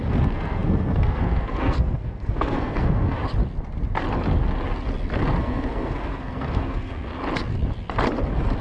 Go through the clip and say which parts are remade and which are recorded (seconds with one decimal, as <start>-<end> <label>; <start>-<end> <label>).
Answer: 0.0-3.2 remade; 3.2-5.4 recorded; 5.4-7.1 remade; 7.1-8.6 recorded